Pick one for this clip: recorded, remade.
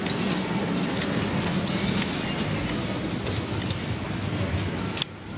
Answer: recorded